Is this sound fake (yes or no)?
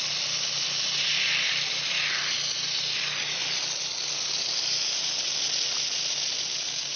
no